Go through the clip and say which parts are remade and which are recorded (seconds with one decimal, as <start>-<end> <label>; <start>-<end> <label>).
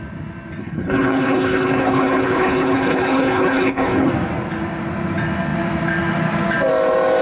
0.0-0.6 recorded; 0.6-4.1 remade; 4.1-7.2 recorded